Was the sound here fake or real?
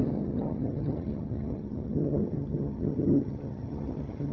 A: fake